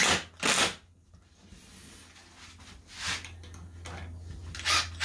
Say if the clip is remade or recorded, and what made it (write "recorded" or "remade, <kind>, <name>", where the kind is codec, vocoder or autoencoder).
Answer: recorded